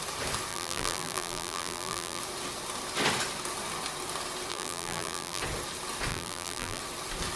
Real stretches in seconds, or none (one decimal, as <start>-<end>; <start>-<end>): 0.0-0.5; 2.2-4.5; 5.4-6.1; 6.8-7.4